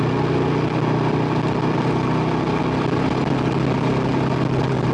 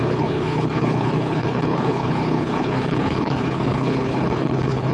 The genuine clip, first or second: first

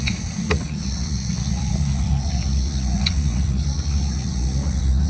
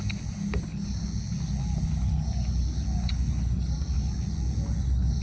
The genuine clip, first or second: second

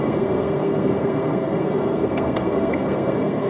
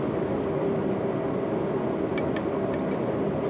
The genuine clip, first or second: second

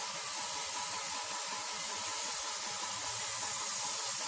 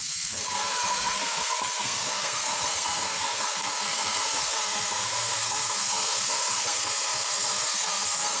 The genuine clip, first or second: first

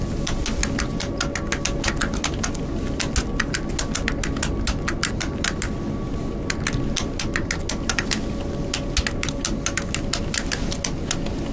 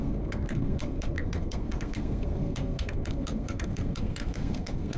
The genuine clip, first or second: first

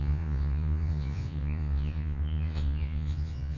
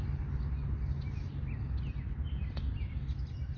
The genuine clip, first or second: second